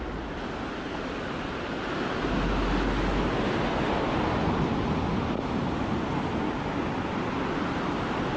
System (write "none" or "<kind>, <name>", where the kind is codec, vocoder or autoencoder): none